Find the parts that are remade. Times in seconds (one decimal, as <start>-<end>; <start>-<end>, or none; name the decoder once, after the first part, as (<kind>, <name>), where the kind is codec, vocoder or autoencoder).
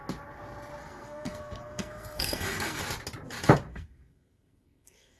0.8-2.8 (codec, SNAC); 3.7-5.2